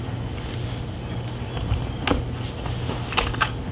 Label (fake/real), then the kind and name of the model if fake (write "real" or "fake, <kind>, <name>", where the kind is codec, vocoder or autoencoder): real